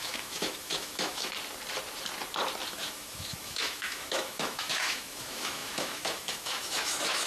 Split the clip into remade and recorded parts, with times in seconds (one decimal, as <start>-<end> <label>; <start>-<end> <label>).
0.0-1.3 remade; 1.3-2.7 recorded; 2.7-7.3 remade